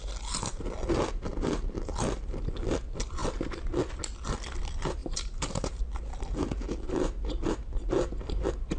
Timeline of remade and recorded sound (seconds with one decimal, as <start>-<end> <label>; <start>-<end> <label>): 0.0-5.0 recorded; 5.0-5.8 remade; 5.8-8.8 recorded